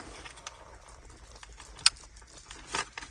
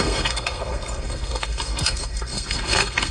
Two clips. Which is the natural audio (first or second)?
first